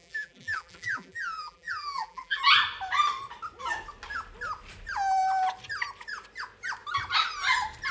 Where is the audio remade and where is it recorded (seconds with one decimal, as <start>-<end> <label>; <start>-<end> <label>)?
0.0-2.4 remade; 2.4-7.9 recorded